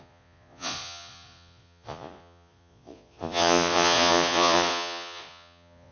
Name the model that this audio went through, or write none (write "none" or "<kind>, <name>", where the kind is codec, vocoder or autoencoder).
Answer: vocoder, Vocos